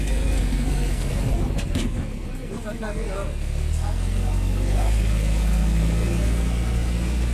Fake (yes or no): yes